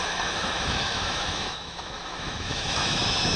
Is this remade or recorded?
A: remade